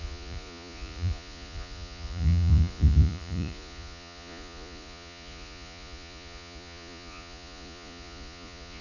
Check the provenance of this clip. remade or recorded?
remade